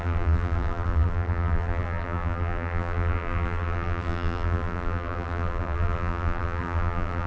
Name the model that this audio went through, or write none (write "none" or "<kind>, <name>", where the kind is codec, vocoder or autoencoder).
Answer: vocoder, BigVGAN v2